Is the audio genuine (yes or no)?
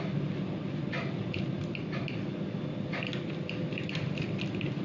yes